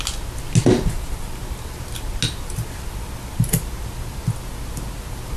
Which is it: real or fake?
real